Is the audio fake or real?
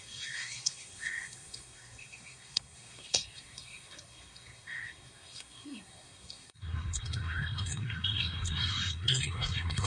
fake